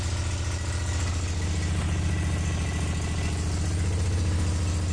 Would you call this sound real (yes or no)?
yes